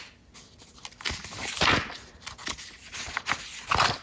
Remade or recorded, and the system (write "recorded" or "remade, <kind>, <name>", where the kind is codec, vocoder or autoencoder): recorded